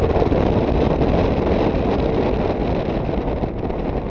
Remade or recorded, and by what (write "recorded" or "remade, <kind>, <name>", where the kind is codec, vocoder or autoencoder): recorded